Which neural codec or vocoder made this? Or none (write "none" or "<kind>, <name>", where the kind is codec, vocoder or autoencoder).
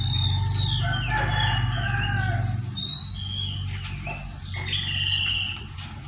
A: none